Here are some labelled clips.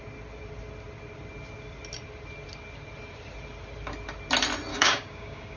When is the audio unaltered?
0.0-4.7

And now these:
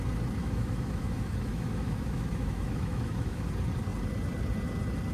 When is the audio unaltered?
0.0-0.4; 3.5-5.1

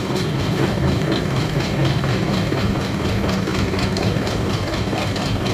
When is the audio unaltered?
none

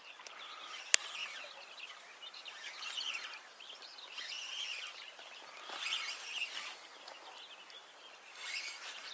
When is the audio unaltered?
0.0-9.1

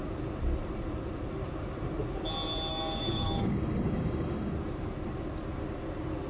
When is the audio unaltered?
0.0-2.7; 4.5-6.3

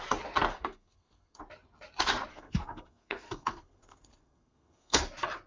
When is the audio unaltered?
0.0-0.5; 1.4-2.3; 5.0-5.5